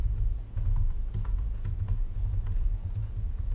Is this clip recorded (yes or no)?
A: no